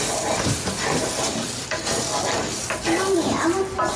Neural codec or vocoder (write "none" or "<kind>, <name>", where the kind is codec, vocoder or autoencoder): none